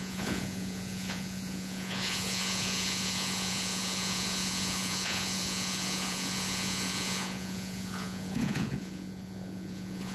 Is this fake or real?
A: fake